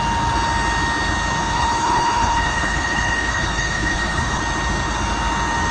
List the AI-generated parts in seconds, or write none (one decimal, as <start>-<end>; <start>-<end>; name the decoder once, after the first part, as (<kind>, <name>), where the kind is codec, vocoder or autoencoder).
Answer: 1.4-4.4 (codec, HILCodec)